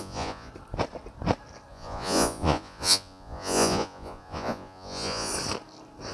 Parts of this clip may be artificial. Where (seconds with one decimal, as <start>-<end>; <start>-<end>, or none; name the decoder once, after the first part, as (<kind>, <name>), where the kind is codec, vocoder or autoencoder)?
0.0-0.5 (vocoder, Vocos); 1.7-5.3